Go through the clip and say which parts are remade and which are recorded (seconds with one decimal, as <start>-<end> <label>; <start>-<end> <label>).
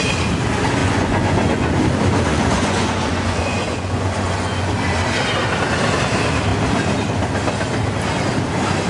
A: 0.0-0.8 recorded; 0.8-1.7 remade; 1.7-2.3 recorded; 2.3-4.7 remade; 4.7-8.9 recorded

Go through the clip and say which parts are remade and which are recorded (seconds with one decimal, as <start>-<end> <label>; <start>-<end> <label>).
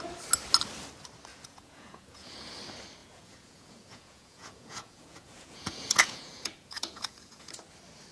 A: 0.0-1.3 recorded; 1.3-2.5 remade; 2.5-3.0 recorded; 3.0-7.5 remade; 7.5-8.1 recorded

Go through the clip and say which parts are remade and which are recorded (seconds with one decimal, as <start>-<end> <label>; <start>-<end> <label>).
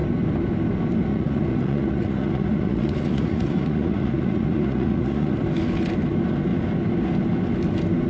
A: 0.0-1.1 recorded; 1.1-5.4 remade; 5.4-8.1 recorded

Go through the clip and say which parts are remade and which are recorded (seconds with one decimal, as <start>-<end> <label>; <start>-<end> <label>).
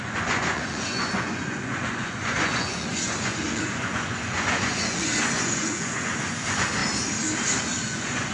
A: 0.0-6.8 remade; 6.8-7.6 recorded; 7.6-8.3 remade